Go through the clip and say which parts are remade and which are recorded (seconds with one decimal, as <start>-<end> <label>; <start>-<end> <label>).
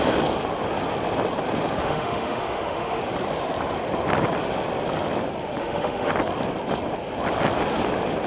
0.0-1.8 recorded; 1.8-3.0 remade; 3.0-5.6 recorded; 5.6-6.1 remade; 6.1-8.3 recorded